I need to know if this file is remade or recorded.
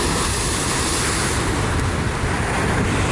recorded